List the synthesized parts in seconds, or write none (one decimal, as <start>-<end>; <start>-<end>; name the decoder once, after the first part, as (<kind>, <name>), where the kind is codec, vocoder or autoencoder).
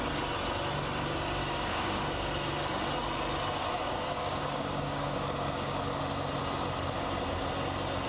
1.4-2.0 (codec, DAC); 3.6-5.7